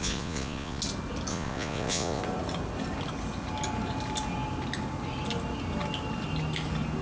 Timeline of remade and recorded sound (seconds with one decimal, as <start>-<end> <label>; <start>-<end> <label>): 0.0-0.8 remade; 0.8-1.3 recorded; 1.3-2.2 remade; 2.2-7.0 recorded